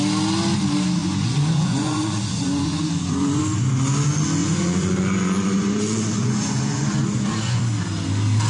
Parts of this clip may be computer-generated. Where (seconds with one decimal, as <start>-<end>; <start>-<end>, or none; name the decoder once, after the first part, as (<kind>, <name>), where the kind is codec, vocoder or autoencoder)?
1.0-3.4 (vocoder, Vocos); 4.4-7.6